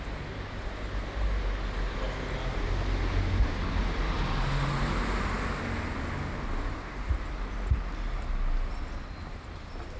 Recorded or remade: recorded